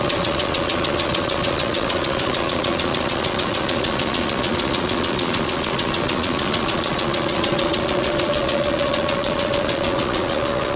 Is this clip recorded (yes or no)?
no